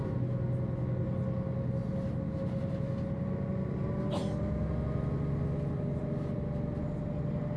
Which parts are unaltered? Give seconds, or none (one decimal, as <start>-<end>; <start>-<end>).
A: 0.0-7.6